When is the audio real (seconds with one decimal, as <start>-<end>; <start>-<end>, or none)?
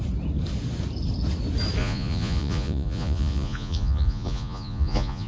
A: 0.0-1.8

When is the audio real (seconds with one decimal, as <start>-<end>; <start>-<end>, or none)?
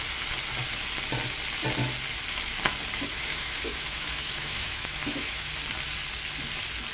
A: 0.0-3.1; 5.5-6.9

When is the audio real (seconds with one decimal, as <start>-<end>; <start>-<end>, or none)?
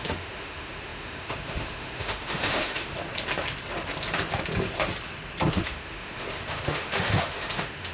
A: 2.9-5.5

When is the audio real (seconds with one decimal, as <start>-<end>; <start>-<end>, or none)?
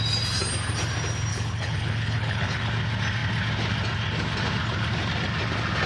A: 0.0-1.3; 2.7-5.9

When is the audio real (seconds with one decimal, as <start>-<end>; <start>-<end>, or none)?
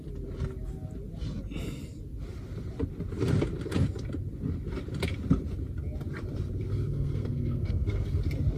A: 0.0-6.7; 8.2-8.6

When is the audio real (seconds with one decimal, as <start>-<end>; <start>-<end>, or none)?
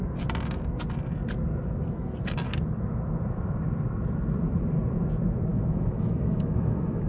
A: 0.0-5.5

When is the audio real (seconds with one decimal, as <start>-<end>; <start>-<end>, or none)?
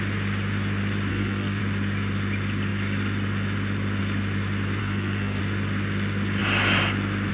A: 0.0-1.1; 1.6-4.8; 5.4-7.3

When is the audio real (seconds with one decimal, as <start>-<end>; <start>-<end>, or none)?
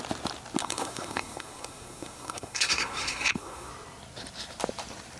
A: 0.0-0.6; 3.7-5.2